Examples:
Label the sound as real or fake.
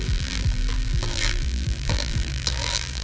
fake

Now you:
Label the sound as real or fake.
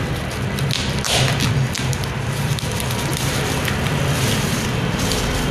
fake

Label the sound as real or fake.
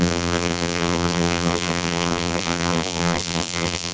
fake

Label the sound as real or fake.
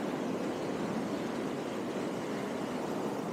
real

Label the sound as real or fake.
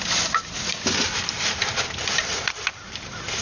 fake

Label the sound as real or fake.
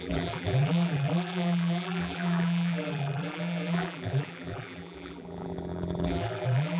fake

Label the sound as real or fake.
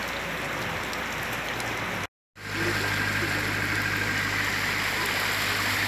real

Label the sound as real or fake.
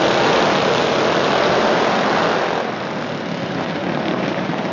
real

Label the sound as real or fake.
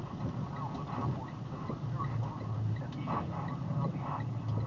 real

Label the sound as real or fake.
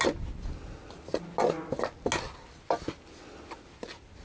real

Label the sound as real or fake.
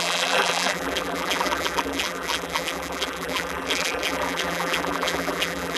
fake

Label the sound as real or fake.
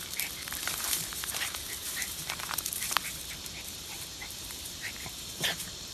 fake